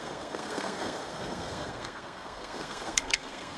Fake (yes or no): yes